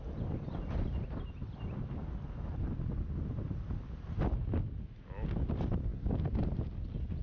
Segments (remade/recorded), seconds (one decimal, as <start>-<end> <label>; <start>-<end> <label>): 0.0-7.2 recorded